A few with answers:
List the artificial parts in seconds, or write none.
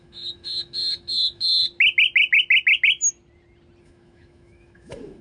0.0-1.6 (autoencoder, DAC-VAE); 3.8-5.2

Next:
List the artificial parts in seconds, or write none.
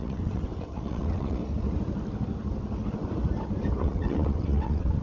0.0-1.4 (vocoder, WaveNeXt); 3.8-5.0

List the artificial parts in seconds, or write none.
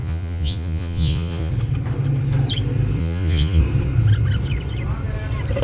0.0-1.5 (vocoder, Vocos); 3.0-3.6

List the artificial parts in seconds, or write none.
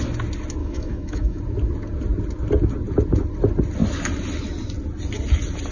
0.6-1.4 (autoencoder, DAC-VAE)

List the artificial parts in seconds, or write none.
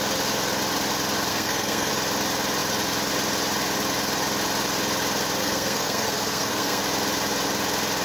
1.3-1.9 (codec, SNAC); 5.4-6.8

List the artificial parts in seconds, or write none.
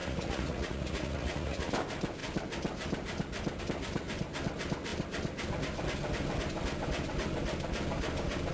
0.0-1.7 (vocoder, Vocos)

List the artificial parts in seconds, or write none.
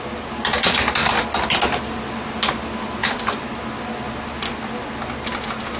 none